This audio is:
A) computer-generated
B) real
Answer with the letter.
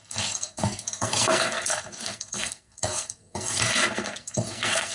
A